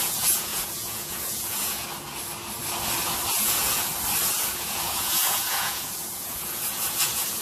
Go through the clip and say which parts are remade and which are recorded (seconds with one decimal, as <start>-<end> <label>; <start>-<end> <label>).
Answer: 0.0-1.8 remade; 1.8-3.3 recorded; 3.3-3.9 remade; 3.9-4.4 recorded; 4.4-7.4 remade